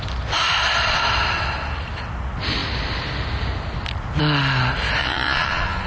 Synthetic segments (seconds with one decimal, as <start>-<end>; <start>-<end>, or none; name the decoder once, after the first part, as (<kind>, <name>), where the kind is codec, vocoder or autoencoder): 5.0-5.9 (vocoder, Vocos)